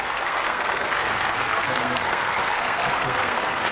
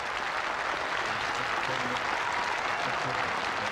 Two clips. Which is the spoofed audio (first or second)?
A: first